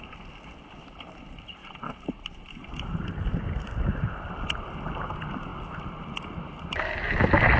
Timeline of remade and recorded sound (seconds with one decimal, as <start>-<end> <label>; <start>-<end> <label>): 0.0-1.6 recorded; 1.6-4.2 remade; 4.2-7.6 recorded